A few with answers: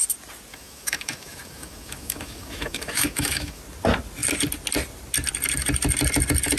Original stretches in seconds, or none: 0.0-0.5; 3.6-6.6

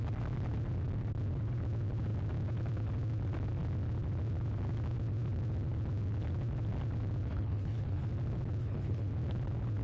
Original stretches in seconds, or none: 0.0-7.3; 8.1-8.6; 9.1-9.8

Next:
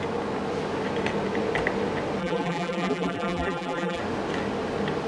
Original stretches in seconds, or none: 0.0-2.2; 4.0-5.1

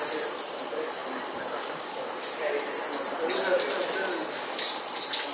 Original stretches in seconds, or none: 0.0-5.3

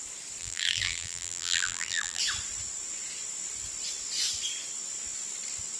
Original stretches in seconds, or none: 0.0-0.4; 2.2-5.8

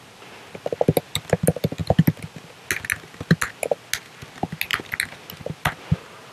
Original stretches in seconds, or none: 0.0-6.3

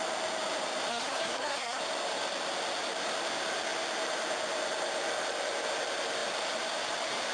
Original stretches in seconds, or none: 0.0-0.9; 1.8-7.3

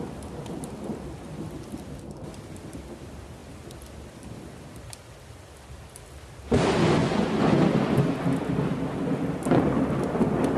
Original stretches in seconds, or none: 0.0-7.0; 7.6-10.6